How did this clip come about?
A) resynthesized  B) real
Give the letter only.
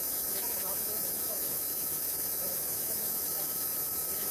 A